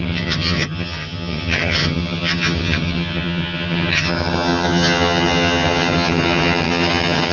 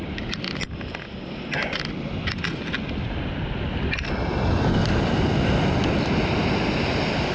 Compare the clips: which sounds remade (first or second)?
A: first